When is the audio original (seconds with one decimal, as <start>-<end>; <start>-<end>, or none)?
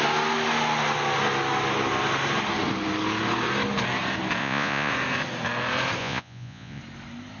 0.0-4.4; 4.9-6.0; 6.8-7.4